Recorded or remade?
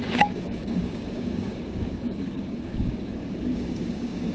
remade